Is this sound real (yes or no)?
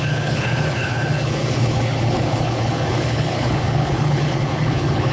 no